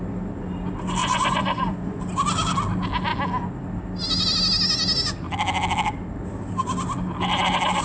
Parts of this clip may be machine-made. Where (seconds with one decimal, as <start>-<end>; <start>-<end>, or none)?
1.0-2.0